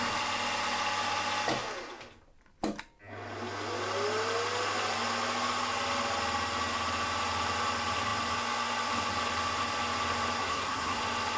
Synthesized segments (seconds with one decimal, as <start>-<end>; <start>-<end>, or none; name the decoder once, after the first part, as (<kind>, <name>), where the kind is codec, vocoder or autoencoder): 10.4-11.0 (codec, SNAC)